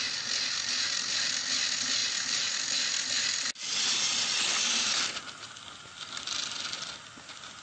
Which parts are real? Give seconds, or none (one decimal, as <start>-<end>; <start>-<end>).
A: 0.0-7.6